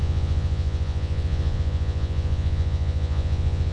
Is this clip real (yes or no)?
no